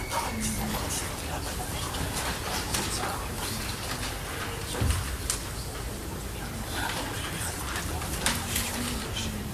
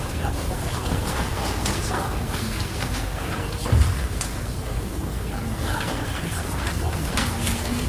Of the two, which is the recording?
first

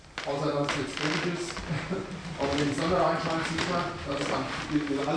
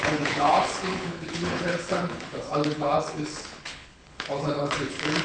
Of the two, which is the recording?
first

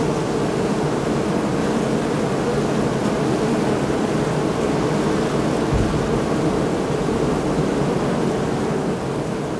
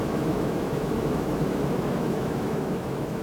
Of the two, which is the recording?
first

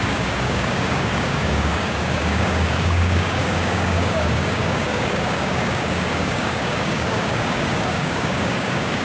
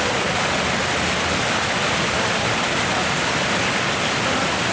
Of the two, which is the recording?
second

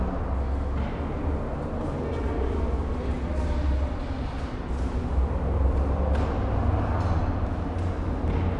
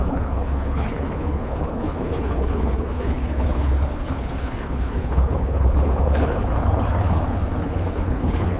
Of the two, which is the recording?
first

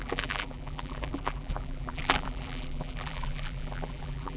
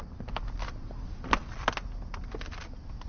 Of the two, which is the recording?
second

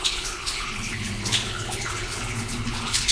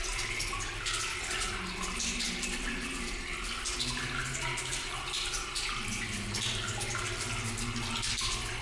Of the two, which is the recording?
second